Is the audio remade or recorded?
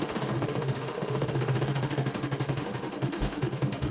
remade